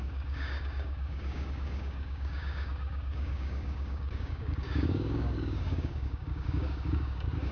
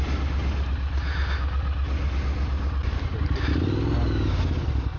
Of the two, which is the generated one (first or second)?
first